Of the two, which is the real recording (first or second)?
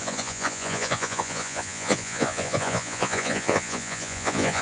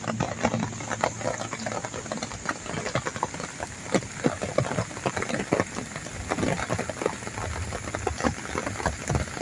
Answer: second